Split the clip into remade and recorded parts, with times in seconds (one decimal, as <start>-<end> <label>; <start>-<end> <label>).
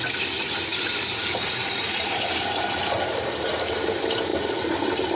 0.0-0.7 recorded; 0.7-3.8 remade; 3.8-4.3 recorded; 4.3-5.2 remade